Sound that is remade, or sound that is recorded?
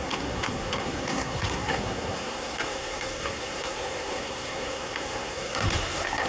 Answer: remade